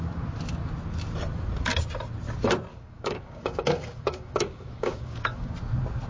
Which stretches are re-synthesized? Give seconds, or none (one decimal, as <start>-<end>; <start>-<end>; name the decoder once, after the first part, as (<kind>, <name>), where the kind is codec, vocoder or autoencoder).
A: 2.7-5.5 (codec, DAC)